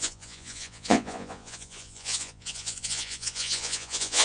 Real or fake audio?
fake